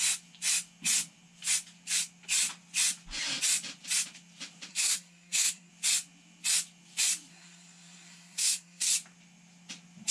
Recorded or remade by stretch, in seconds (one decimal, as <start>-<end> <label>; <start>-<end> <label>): 0.0-4.7 recorded; 4.7-5.7 remade; 5.7-7.3 recorded; 7.3-8.9 remade; 8.9-10.1 recorded